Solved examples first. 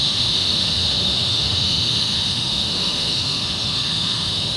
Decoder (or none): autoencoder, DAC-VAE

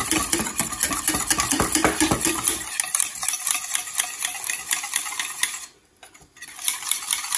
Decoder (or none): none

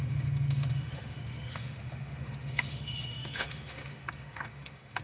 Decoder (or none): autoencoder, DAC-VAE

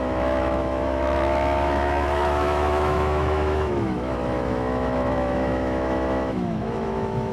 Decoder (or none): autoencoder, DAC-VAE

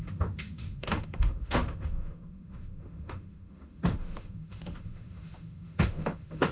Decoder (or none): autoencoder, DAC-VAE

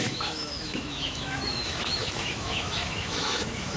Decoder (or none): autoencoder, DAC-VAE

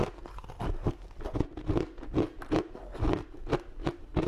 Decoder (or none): none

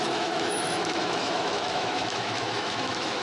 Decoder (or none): autoencoder, DAC-VAE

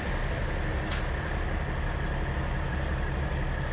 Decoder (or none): none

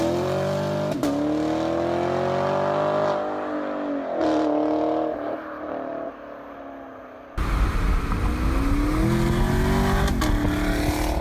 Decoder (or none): none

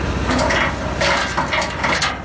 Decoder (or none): none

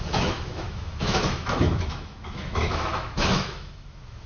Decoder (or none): autoencoder, DAC-VAE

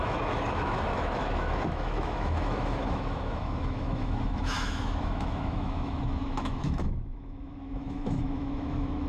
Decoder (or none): autoencoder, DAC-VAE